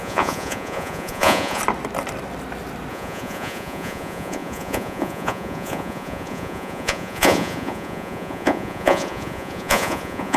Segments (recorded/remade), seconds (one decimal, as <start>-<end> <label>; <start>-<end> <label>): 0.0-1.6 remade; 1.6-2.9 recorded; 2.9-10.4 remade